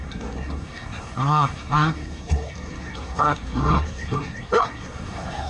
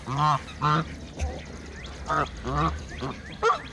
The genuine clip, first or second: second